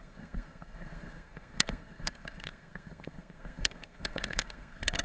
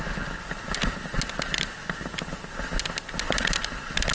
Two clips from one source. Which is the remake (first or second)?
first